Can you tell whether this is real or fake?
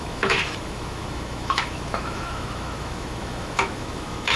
fake